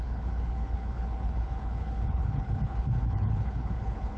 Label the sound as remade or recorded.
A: remade